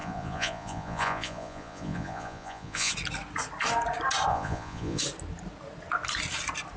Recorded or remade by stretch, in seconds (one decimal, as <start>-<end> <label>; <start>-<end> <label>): 0.0-2.9 remade; 2.9-4.3 recorded; 4.3-5.0 remade; 5.0-6.8 recorded